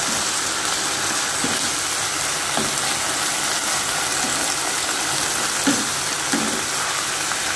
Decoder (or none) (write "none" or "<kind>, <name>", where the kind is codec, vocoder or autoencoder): none